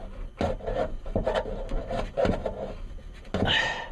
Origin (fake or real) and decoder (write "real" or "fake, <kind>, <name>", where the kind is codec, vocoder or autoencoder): real